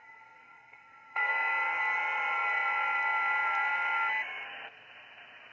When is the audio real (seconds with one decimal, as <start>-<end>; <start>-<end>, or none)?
1.3-5.5